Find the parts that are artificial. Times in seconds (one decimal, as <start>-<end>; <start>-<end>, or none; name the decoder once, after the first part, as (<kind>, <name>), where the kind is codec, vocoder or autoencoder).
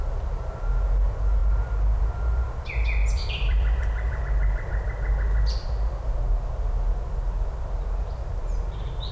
3.0-4.2 (vocoder, BigVGAN v2)